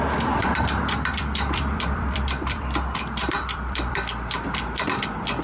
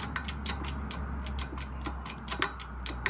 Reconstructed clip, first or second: first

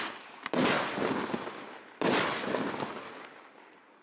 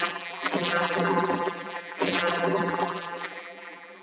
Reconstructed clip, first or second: second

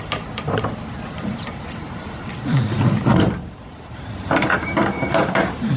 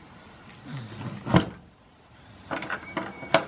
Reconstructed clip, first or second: first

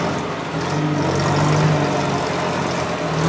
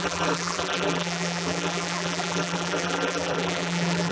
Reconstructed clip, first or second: second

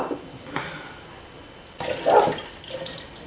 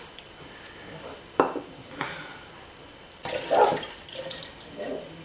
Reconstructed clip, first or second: second